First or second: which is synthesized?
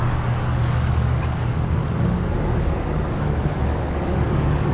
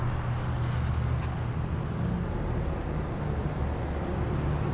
first